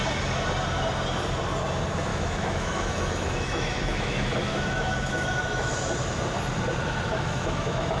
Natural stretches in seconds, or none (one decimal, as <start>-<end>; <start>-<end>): 0.0-2.1; 5.7-7.1